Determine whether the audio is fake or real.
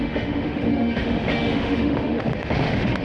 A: fake